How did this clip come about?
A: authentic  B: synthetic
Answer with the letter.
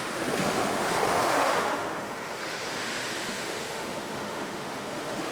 B